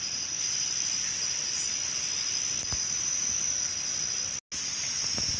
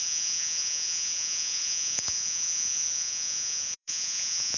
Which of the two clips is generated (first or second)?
second